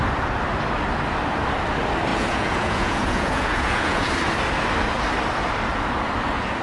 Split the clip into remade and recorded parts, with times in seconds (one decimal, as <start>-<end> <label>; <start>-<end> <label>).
0.0-2.1 recorded; 2.1-4.1 remade; 4.1-6.6 recorded